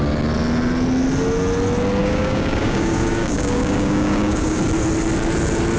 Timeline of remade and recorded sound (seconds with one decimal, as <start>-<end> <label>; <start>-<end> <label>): 0.0-2.0 recorded; 2.0-4.6 remade; 4.6-5.8 recorded